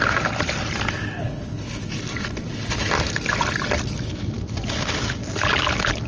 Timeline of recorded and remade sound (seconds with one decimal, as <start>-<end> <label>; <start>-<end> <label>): 0.0-1.2 recorded; 1.2-1.8 remade; 1.8-6.1 recorded